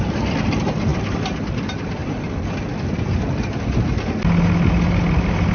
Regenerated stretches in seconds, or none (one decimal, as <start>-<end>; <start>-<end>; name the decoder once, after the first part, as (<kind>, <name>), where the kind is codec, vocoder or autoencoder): none